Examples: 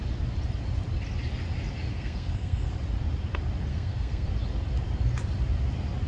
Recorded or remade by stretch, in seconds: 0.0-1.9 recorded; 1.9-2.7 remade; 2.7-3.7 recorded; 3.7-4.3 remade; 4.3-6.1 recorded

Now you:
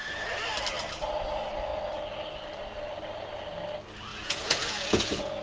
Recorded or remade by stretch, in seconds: 0.0-4.1 recorded; 4.1-5.4 remade